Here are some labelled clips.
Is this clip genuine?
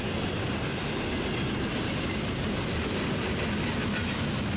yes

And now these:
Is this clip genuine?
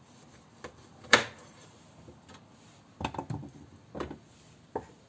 yes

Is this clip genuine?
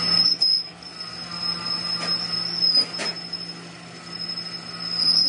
yes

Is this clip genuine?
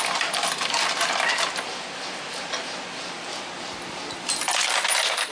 no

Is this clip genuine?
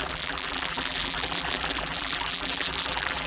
no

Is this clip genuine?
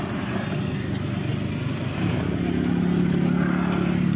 yes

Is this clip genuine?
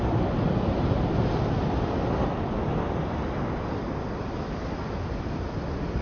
yes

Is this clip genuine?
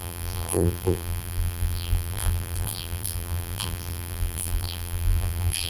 no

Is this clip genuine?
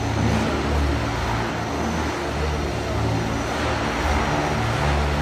yes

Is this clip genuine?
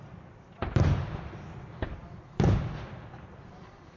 no